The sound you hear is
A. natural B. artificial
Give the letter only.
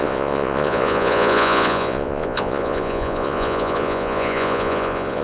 B